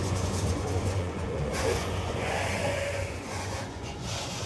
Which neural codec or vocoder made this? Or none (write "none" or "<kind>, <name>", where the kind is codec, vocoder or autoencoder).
vocoder, Vocos